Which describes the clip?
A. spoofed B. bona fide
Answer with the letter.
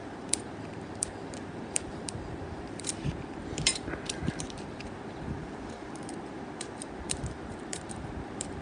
A